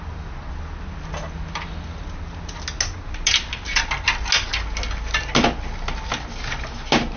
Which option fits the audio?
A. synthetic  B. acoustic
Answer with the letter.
B